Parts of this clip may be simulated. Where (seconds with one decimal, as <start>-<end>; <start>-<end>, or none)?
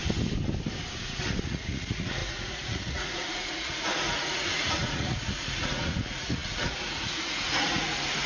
1.0-8.3